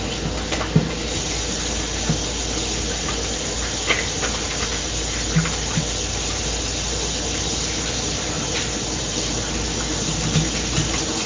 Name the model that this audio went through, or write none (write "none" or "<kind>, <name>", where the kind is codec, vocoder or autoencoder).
none